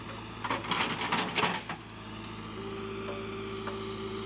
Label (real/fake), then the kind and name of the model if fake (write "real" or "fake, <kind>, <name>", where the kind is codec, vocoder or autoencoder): real